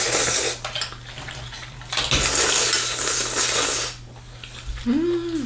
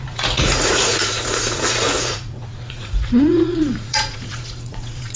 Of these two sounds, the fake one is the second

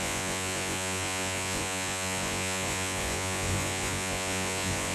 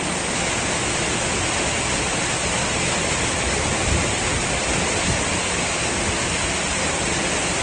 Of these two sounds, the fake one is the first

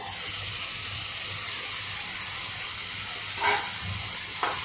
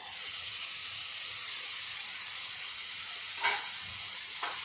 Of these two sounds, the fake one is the second